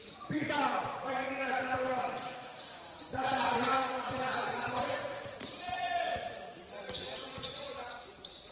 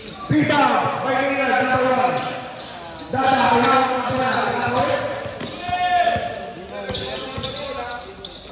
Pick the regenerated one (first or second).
first